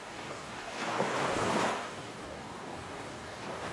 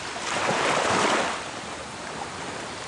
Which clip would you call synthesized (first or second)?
first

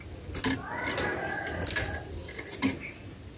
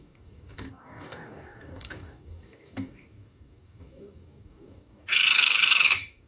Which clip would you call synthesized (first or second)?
second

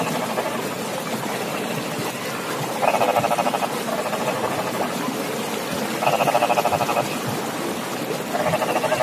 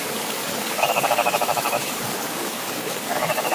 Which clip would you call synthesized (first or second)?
second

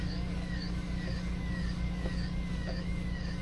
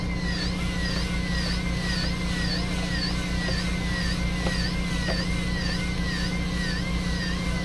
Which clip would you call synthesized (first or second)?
first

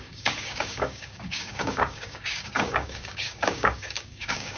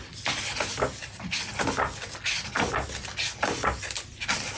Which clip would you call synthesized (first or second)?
first